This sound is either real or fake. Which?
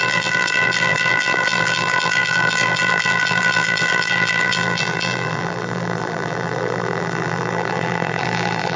fake